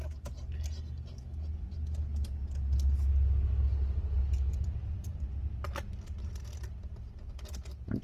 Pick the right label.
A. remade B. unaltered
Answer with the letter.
B